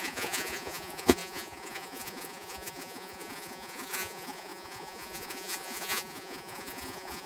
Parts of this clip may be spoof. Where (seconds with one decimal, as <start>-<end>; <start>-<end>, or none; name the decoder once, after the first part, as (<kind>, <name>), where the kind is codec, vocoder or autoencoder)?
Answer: 0.0-7.3 (vocoder, Vocos)